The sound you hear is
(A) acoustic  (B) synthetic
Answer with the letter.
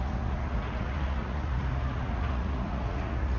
B